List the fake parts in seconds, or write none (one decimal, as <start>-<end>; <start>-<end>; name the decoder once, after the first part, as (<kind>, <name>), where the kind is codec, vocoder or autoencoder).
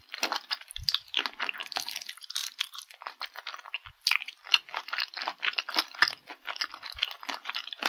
none